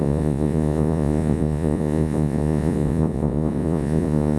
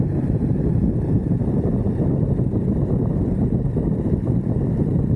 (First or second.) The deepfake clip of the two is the first